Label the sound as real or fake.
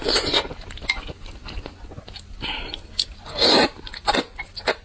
real